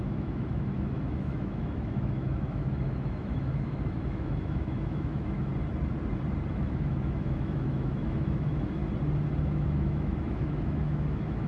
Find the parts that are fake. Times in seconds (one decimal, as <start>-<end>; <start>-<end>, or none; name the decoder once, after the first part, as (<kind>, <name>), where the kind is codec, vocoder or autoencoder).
0.0-5.5 (autoencoder, DAC-VAE); 6.5-8.8; 9.4-11.5

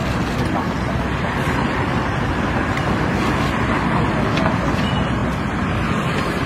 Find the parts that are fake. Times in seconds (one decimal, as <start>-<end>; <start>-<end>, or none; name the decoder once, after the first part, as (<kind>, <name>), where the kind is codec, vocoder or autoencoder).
none